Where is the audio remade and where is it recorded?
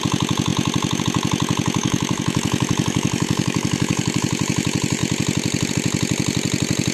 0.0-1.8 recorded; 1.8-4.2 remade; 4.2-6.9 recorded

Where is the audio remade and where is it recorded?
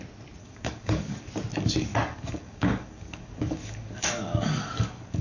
0.0-0.4 recorded; 0.4-1.3 remade; 1.3-1.9 recorded; 1.9-5.2 remade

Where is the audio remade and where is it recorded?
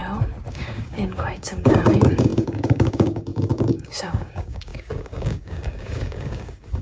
0.0-0.5 recorded; 0.5-6.8 remade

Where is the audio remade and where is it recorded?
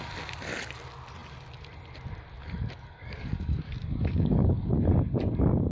0.0-2.4 recorded; 2.4-4.9 remade; 4.9-5.7 recorded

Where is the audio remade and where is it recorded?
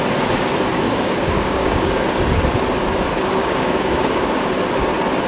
0.0-0.7 recorded; 0.7-2.4 remade; 2.4-3.4 recorded; 3.4-4.5 remade; 4.5-5.3 recorded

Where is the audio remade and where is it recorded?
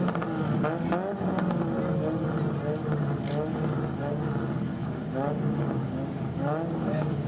0.0-4.8 recorded; 4.8-7.3 remade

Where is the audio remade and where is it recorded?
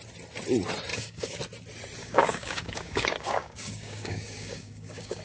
0.0-0.9 recorded; 0.9-1.4 remade; 1.4-2.0 recorded; 2.0-5.2 remade